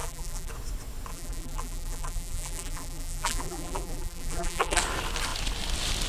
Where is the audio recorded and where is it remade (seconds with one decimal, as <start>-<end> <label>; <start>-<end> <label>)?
0.0-0.5 remade; 0.5-1.1 recorded; 1.1-4.8 remade; 4.8-6.1 recorded